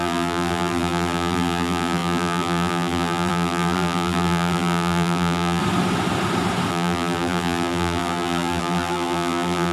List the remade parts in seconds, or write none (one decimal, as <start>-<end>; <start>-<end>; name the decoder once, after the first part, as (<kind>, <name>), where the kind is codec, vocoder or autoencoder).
0.0-5.6 (vocoder, BigVGAN v2); 6.7-9.7